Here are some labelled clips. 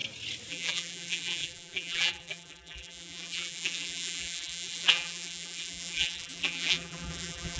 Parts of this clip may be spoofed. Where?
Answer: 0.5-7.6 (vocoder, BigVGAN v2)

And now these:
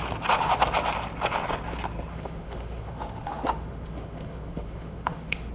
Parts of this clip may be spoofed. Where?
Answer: 2.1-5.5 (autoencoder, DAC-VAE)

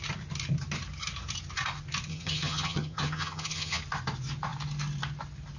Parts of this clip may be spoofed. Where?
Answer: 2.1-3.8 (vocoder, HiFi-GAN)

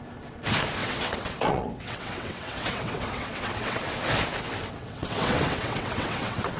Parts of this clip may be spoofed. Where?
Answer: 0.8-3.8 (vocoder, WaveNeXt); 4.8-6.6

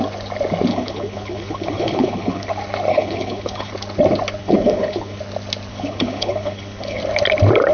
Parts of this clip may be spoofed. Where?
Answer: 0.7-2.5 (codec, HILCodec); 2.9-3.7; 4.4-5.2; 5.7-7.0

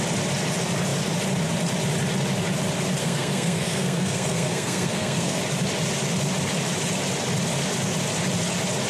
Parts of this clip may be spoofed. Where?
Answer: 3.0-5.4 (codec, SNAC)

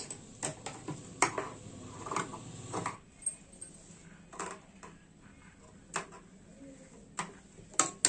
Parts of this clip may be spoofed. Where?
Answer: none

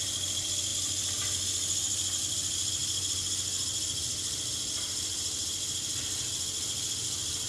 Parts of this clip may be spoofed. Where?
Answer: none